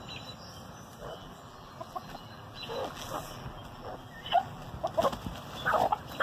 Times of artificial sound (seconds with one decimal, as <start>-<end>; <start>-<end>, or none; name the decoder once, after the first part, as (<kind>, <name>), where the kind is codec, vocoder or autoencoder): 1.0-4.7 (vocoder, BigVGAN v2)

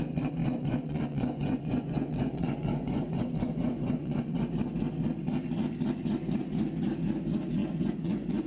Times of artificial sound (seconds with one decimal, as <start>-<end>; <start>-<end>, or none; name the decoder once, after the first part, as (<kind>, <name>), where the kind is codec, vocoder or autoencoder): 0.4-4.5 (vocoder, Vocos); 7.6-8.5

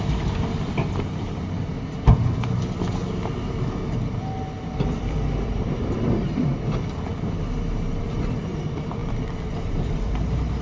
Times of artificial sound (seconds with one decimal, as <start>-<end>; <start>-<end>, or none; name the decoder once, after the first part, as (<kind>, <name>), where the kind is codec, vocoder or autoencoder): 0.0-6.5 (vocoder, BigVGAN v2); 8.0-9.0; 9.7-10.6

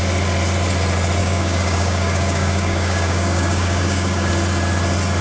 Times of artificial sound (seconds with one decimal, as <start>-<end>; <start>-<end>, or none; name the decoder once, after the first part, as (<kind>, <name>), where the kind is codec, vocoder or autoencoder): 1.2-4.3 (codec, DAC)